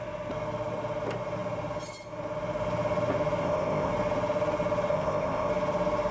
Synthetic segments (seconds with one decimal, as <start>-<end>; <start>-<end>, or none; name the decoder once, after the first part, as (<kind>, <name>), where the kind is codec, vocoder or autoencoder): 3.4-3.9 (codec, ZipCodec); 4.9-5.5